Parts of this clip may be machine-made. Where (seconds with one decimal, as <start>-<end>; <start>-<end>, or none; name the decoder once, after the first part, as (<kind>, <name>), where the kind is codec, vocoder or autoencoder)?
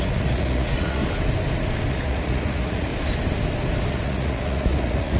0.0-1.0 (vocoder, Vocos); 1.9-2.9; 3.9-5.2